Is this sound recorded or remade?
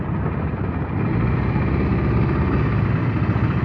recorded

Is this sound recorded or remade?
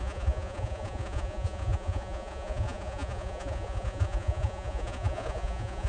remade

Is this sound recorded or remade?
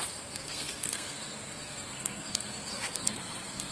remade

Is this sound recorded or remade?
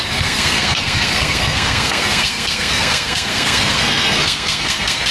remade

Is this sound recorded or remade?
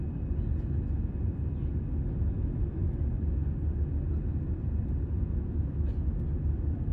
recorded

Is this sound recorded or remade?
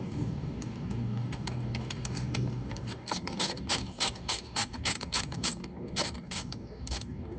remade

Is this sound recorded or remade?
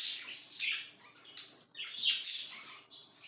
recorded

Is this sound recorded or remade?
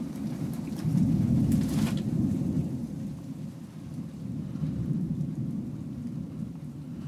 remade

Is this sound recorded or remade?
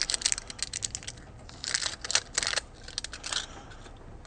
recorded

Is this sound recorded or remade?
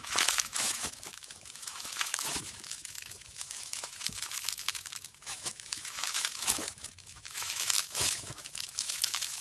remade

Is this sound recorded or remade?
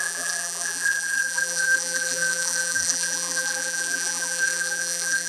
remade